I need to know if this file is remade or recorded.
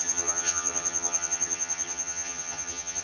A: remade